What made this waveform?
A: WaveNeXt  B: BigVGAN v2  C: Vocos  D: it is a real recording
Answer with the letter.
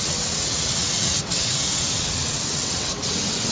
A